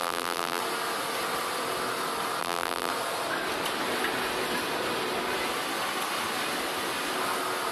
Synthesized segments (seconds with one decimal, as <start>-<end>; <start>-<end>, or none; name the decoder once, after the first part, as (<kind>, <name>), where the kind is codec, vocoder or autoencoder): 0.0-0.6 (vocoder, BigVGAN v2); 2.4-2.9